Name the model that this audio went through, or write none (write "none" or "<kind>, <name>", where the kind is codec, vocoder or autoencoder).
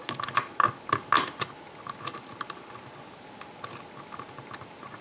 none